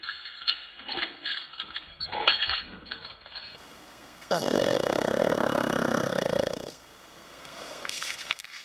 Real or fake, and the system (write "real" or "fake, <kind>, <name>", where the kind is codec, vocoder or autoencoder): fake, codec, SNAC